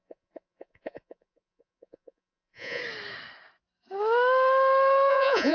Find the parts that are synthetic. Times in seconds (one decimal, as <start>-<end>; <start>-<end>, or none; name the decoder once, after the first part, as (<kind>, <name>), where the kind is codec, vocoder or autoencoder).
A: 0.0-2.8 (vocoder, Vocos); 5.1-5.5